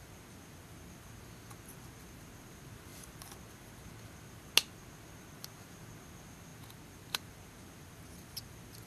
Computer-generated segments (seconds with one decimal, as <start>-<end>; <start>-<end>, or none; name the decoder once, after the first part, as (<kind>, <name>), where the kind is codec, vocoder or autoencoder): none